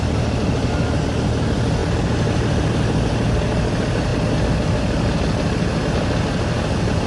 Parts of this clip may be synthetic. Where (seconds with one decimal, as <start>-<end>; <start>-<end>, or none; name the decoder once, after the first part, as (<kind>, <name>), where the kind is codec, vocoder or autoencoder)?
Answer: 1.8-2.6 (vocoder, BigVGAN v2)